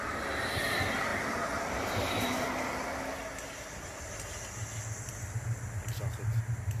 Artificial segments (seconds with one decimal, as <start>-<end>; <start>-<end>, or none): none